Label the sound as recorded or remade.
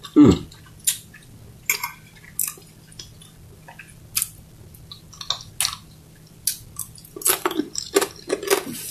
recorded